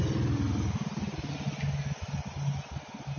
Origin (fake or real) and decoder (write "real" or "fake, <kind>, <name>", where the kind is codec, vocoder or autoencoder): real